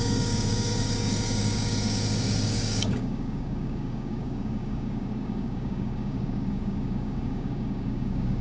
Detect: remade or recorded remade